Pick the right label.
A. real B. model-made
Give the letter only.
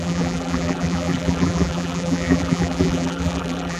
B